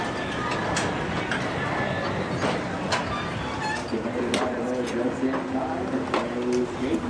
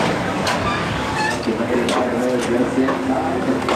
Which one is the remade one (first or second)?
second